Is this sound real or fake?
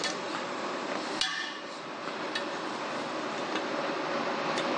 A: real